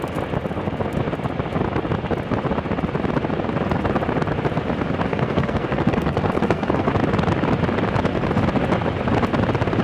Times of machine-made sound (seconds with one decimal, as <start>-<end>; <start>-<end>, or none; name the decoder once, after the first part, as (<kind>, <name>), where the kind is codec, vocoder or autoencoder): 5.1-6.9 (codec, SNAC)